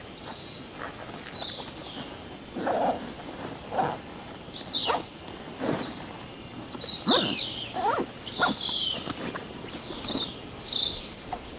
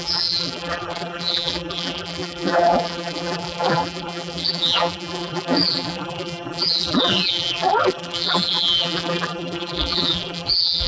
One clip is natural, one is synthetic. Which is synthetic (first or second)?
second